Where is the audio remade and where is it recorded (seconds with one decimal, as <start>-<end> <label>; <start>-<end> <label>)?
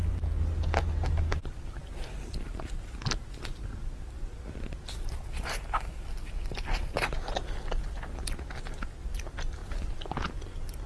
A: 0.0-10.9 recorded